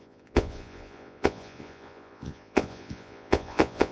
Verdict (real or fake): fake